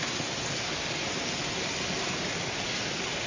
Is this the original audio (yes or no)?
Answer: yes